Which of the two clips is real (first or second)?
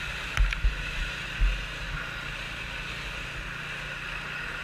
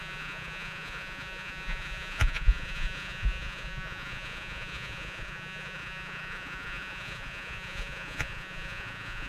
first